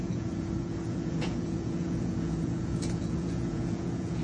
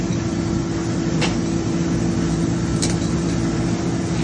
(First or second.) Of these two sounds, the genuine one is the second